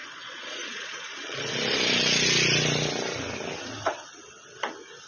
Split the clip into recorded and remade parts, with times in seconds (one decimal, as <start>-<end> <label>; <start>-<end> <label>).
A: 0.0-1.4 remade; 1.4-5.1 recorded